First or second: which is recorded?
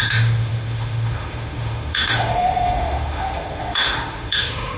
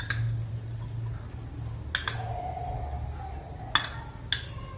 second